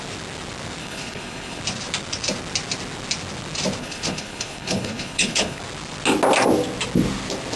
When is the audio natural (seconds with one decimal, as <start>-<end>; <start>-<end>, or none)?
0.0-0.8; 1.6-3.8; 5.6-7.6